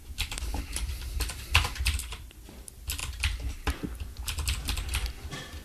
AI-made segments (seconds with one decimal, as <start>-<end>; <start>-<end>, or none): none